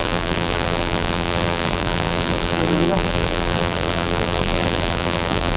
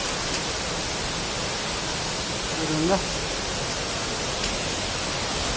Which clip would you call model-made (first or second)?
first